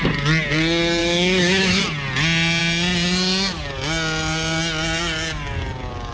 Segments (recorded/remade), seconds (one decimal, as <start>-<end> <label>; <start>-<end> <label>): 0.0-1.0 recorded; 1.0-1.8 remade; 1.8-6.1 recorded